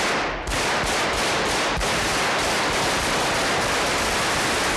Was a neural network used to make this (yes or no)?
no